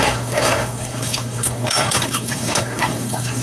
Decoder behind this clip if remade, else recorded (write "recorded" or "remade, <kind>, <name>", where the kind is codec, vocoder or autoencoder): remade, codec, SNAC